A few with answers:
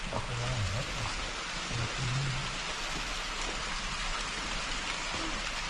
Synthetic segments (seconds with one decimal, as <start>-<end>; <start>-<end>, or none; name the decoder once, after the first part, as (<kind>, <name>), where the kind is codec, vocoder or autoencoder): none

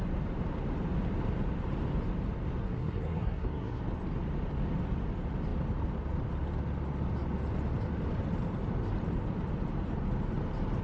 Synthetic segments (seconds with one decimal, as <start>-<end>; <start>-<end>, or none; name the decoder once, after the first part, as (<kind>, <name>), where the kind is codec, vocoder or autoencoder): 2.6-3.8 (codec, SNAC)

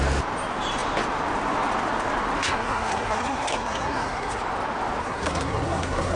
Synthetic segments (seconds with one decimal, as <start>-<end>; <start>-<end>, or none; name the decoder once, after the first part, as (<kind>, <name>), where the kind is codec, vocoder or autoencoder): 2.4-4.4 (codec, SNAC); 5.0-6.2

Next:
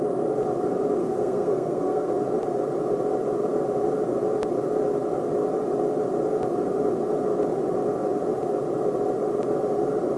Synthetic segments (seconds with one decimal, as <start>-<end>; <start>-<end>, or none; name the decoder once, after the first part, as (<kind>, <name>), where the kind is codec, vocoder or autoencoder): 1.0-2.1 (codec, SNAC)

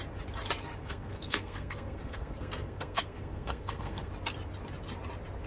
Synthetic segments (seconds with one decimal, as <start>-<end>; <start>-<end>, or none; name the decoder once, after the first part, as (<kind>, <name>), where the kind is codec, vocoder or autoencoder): 0.8-4.1 (codec, SNAC)

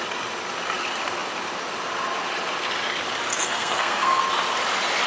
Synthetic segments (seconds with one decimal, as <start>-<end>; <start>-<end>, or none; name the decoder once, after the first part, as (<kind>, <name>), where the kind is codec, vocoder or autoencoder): 3.3-4.2 (codec, SNAC)

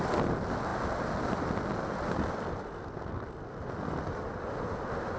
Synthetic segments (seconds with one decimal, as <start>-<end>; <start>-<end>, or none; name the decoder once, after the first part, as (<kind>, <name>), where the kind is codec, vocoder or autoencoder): none

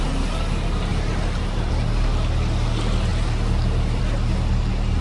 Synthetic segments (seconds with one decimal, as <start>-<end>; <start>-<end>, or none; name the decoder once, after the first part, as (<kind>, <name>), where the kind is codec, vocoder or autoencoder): none